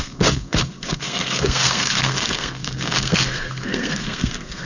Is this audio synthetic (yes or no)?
yes